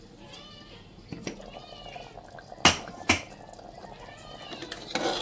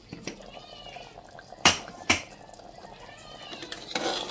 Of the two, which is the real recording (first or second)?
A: first